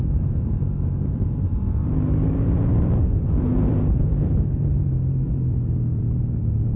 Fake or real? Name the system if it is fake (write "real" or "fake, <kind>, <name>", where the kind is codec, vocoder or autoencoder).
fake, vocoder, BigVGAN v2